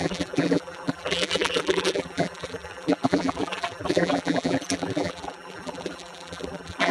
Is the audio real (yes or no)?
no